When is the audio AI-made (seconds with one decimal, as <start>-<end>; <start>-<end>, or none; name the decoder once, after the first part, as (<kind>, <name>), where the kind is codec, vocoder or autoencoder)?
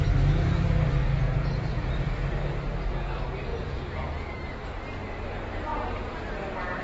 1.0-1.9 (vocoder, Vocos); 3.5-4.5; 5.7-6.2